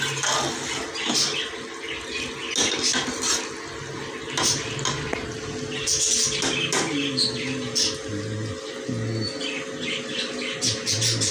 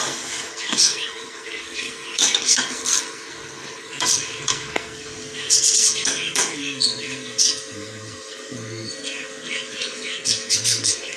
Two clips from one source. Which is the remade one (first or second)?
second